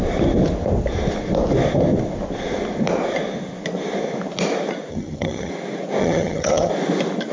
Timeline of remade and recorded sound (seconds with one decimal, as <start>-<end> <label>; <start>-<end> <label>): 0.0-4.9 recorded; 4.9-5.5 remade; 5.5-6.0 recorded; 6.0-6.7 remade; 6.7-7.3 recorded